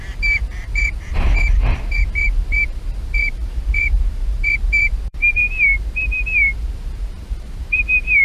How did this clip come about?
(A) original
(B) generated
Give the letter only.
B